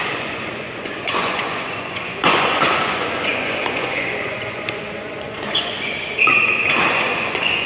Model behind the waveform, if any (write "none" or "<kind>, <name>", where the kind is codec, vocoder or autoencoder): vocoder, Vocos